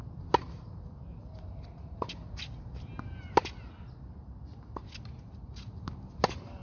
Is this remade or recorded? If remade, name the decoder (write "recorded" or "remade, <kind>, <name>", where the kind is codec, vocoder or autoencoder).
recorded